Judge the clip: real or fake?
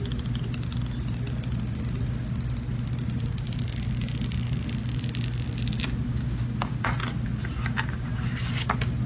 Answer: real